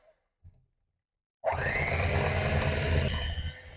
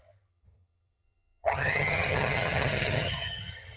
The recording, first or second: first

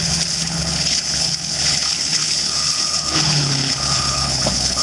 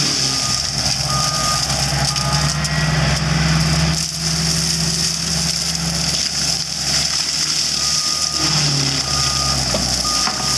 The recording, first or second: second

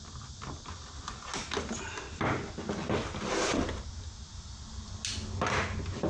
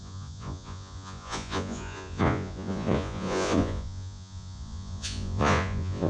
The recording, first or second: first